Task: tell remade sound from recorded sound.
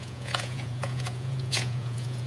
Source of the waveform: remade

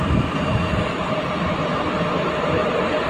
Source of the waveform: recorded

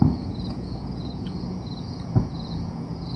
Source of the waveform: remade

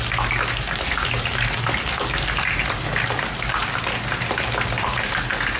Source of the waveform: recorded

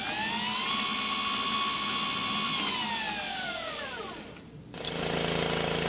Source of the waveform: recorded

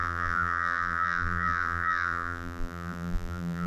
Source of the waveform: remade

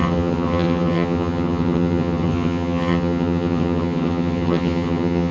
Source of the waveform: remade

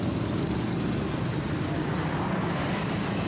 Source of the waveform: recorded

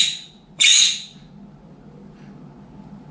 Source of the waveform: recorded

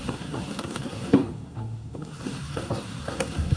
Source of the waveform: remade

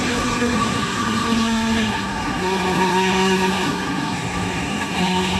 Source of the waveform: remade